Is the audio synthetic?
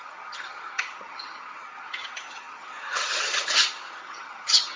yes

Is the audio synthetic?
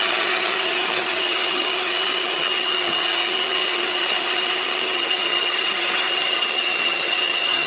yes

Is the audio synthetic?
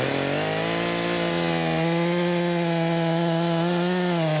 no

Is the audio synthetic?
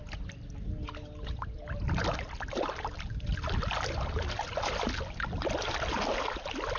no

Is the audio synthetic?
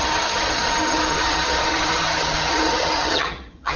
yes